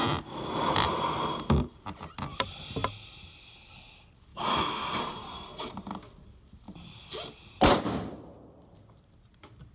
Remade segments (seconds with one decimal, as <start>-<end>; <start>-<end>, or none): 4.3-5.0